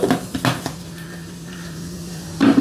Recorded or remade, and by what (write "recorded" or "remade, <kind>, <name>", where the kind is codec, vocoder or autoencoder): recorded